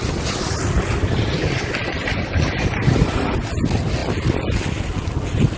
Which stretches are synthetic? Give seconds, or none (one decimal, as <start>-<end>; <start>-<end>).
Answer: none